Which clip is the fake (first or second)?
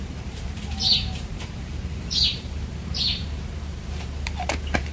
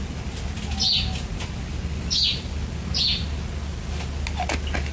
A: first